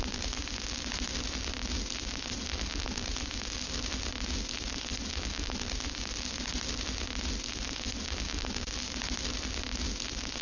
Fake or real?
real